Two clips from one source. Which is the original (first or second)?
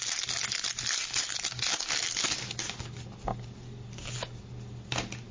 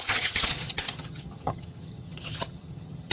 first